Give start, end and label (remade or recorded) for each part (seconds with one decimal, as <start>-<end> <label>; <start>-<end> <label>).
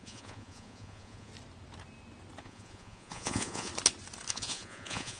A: 0.0-1.3 remade; 1.3-2.4 recorded; 2.4-3.7 remade; 3.7-4.3 recorded; 4.3-5.2 remade